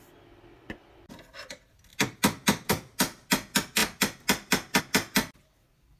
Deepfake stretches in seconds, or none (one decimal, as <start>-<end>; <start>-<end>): none